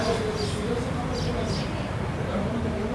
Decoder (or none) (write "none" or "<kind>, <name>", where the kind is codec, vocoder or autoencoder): none